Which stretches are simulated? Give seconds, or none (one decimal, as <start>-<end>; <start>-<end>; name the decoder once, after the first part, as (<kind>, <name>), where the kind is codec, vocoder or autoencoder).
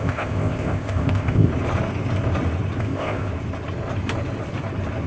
0.0-1.5 (codec, ZipCodec); 2.8-3.3